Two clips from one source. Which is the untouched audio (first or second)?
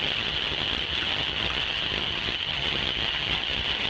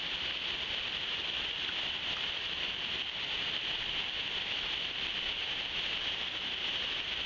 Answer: second